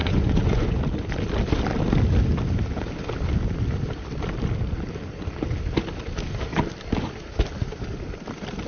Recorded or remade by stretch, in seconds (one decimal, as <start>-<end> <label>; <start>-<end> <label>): 0.0-0.8 remade; 0.8-8.7 recorded